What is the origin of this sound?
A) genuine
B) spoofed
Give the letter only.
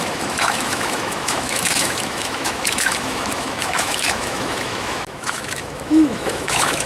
B